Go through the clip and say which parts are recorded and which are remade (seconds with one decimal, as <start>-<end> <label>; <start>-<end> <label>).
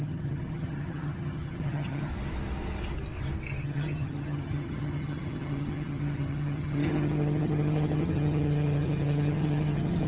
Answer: 0.0-2.1 remade; 2.1-3.6 recorded; 3.6-10.1 remade